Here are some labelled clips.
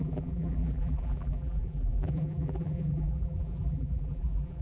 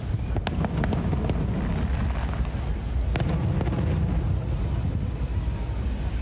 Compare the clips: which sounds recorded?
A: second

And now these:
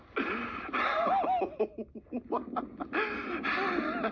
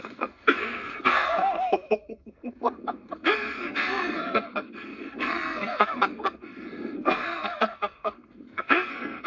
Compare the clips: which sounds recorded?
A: first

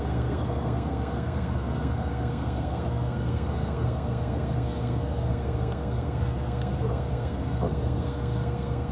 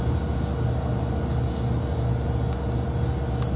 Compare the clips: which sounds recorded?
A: second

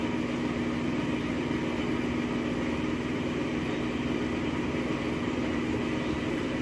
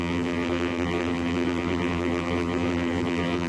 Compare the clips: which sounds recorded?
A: first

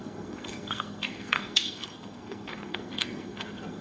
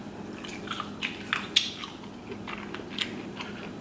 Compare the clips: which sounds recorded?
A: second